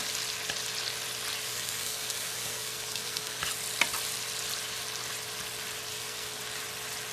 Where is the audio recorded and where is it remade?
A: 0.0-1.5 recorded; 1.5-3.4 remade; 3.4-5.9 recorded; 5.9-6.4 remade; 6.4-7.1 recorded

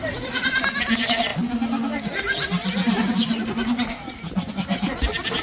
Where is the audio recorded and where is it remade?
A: 0.0-5.4 recorded

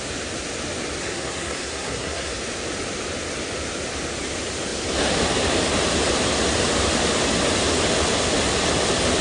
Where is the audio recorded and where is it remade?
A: 0.0-1.0 recorded; 1.0-2.4 remade; 2.4-9.2 recorded

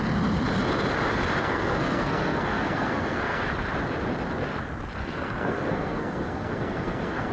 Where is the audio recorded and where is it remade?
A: 0.0-1.4 recorded; 1.4-3.5 remade; 3.5-5.0 recorded; 5.0-7.3 remade

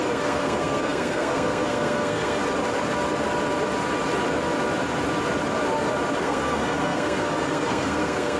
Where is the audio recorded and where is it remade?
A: 0.0-2.4 remade; 2.4-6.2 recorded; 6.2-8.4 remade

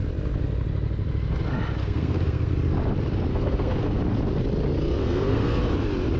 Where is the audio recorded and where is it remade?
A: 0.0-1.8 recorded; 1.8-2.5 remade; 2.5-3.3 recorded; 3.3-4.0 remade; 4.0-5.0 recorded; 5.0-5.6 remade; 5.6-6.2 recorded

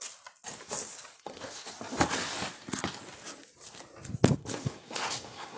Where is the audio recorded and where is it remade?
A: 0.0-1.1 recorded; 1.1-1.7 remade; 1.7-4.4 recorded; 4.4-5.6 remade

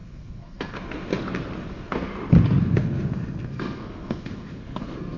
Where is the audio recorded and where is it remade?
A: 0.0-1.1 remade; 1.1-1.7 recorded; 1.7-2.1 remade; 2.1-2.6 recorded; 2.6-5.2 remade